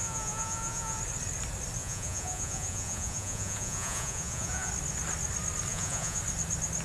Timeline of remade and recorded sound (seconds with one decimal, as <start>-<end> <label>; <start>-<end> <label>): 0.0-1.0 remade; 1.0-1.8 recorded; 1.8-4.7 remade; 4.7-5.7 recorded; 5.7-6.2 remade; 6.2-6.8 recorded